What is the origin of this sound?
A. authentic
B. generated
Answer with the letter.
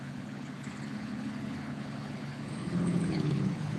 B